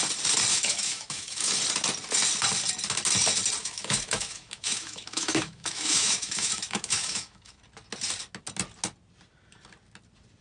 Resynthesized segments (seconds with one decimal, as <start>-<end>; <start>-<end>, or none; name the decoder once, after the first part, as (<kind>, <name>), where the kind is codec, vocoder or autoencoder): 0.5-1.5 (autoencoder, DAC-VAE); 3.6-7.6